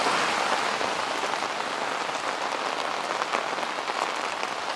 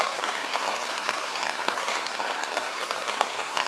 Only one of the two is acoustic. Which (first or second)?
first